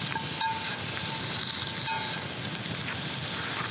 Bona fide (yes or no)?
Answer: yes